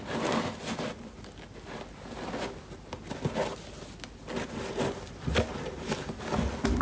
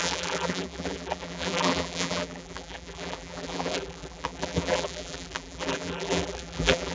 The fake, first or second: second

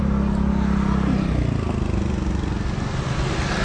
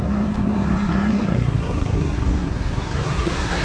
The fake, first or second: second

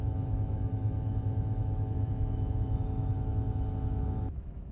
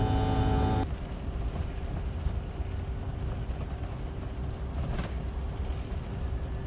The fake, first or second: first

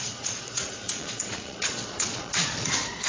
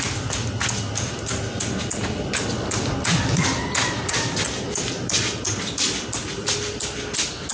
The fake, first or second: first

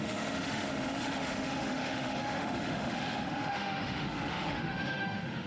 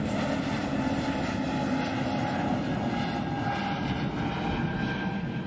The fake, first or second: first